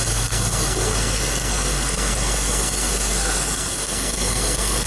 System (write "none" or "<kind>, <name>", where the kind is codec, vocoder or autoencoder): codec, SNAC